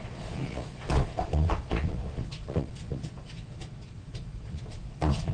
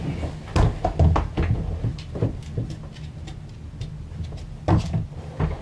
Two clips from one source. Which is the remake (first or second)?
first